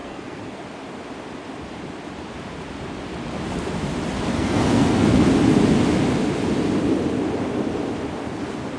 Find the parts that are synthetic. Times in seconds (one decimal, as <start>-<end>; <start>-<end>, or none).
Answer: 0.0-0.6; 4.3-5.2

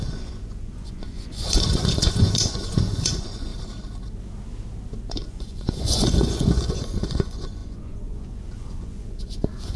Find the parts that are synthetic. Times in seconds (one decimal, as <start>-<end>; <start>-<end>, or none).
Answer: 0.0-3.5; 5.1-9.8

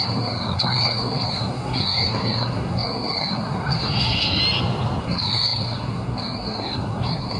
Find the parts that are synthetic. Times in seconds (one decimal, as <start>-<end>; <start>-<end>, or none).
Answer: 0.0-4.4; 5.0-7.4

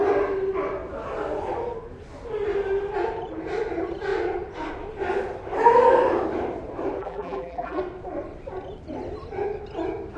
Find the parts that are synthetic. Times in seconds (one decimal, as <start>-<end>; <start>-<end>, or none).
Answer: 7.0-7.8